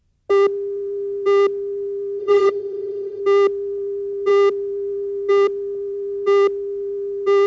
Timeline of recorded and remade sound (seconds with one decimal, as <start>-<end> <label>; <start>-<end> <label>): 0.0-2.2 recorded; 2.2-3.2 remade; 3.2-7.5 recorded